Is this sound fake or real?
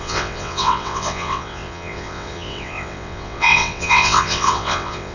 fake